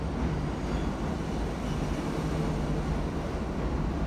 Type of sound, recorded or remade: recorded